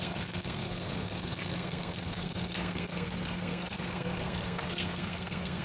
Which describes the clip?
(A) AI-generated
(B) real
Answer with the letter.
A